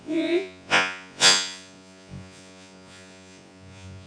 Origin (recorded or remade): remade